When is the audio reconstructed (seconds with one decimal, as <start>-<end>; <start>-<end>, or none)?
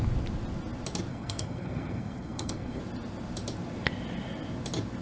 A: 1.1-2.8